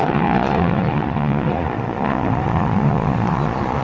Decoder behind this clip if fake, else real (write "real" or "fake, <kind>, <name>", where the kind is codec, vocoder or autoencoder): fake, vocoder, Vocos